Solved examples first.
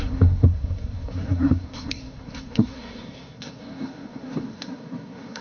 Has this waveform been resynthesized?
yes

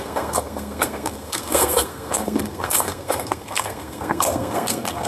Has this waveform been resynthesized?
yes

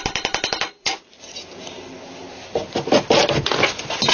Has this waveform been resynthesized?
no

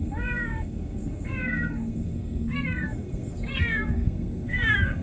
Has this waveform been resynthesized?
yes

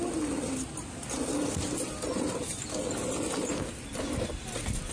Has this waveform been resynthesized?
no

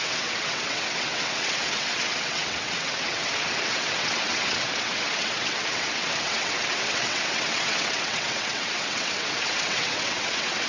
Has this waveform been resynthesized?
yes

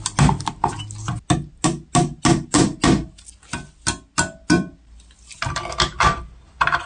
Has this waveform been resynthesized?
no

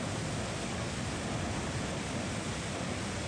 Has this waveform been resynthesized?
no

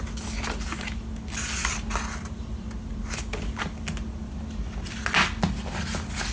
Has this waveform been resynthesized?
no